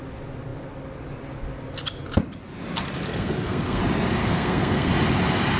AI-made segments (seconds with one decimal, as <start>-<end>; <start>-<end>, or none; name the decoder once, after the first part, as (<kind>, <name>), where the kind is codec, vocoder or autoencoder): 3.1-3.8 (codec, SNAC); 4.2-4.9